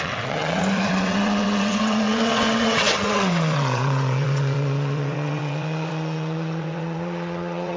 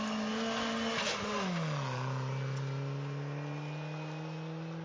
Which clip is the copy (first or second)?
first